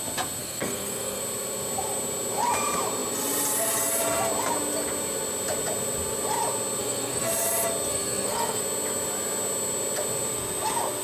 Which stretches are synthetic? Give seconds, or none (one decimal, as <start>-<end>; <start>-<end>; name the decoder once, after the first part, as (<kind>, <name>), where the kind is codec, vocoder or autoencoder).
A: 0.4-1.2 (codec, SNAC); 6.8-7.3; 7.9-8.6